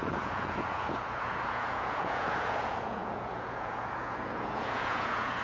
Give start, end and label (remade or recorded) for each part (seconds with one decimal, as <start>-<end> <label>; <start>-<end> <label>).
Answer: 0.0-5.4 remade